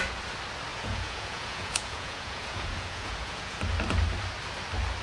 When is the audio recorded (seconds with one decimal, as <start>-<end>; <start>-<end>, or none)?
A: 0.0-0.7; 3.6-5.0